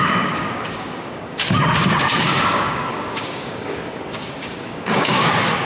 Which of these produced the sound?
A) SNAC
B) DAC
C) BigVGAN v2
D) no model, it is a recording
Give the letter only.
B